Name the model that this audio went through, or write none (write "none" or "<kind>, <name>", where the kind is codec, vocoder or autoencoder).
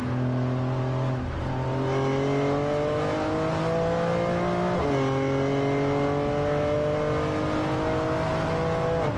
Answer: none